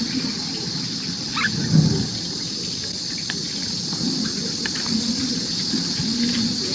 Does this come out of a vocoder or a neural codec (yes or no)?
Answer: no